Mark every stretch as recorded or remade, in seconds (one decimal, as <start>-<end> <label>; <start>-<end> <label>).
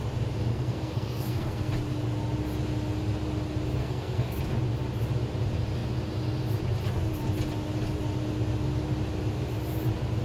0.0-0.5 recorded; 0.5-1.7 remade; 1.7-3.8 recorded; 3.8-4.4 remade; 4.4-10.2 recorded